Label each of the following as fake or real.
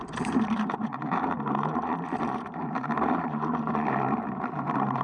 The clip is fake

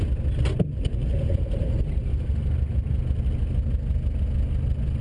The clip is real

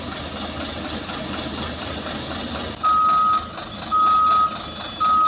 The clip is real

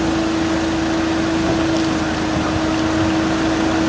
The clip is real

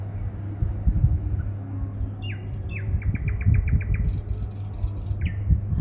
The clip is real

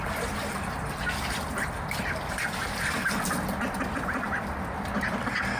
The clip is fake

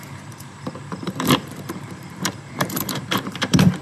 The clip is fake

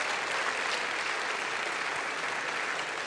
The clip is real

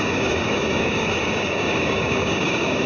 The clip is fake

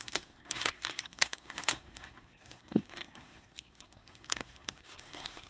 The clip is fake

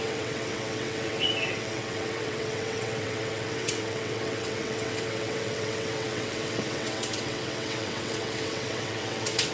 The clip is fake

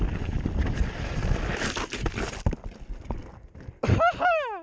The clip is real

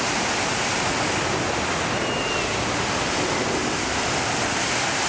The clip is real